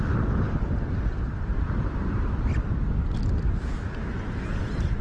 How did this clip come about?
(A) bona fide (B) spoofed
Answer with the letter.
A